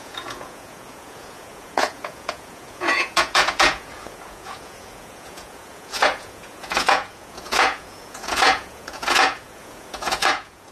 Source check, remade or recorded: remade